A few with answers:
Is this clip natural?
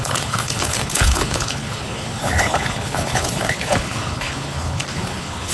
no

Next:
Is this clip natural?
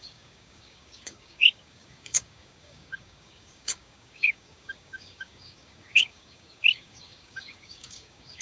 no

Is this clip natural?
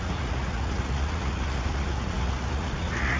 no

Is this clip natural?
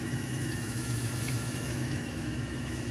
no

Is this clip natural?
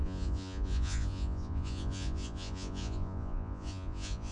no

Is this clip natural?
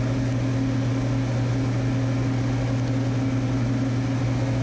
yes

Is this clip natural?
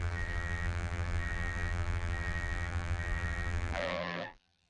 no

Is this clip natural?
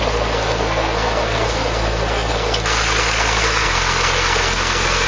no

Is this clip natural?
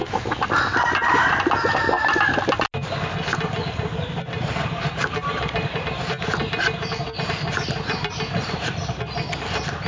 yes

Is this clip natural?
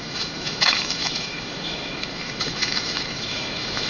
no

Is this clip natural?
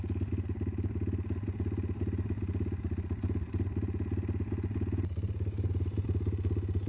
yes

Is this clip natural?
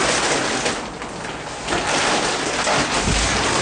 yes